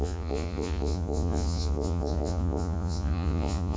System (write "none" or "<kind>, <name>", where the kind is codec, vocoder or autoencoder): vocoder, Vocos